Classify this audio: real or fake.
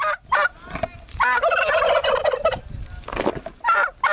real